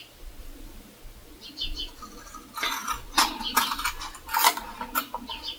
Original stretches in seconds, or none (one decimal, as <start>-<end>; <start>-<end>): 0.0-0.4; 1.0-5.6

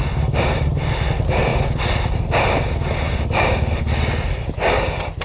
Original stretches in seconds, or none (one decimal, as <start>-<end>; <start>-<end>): 0.9-5.2

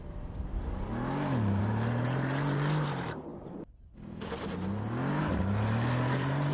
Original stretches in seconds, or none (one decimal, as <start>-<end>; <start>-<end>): 0.5-1.6; 3.3-5.2